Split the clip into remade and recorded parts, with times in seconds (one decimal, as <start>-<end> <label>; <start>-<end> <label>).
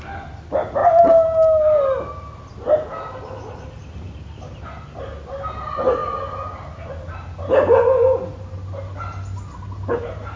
0.0-10.4 recorded